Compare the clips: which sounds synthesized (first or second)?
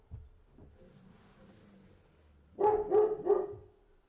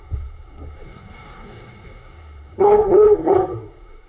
second